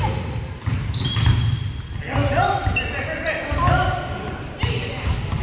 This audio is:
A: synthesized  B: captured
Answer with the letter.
B